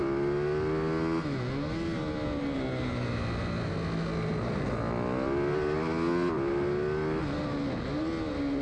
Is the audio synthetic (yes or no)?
no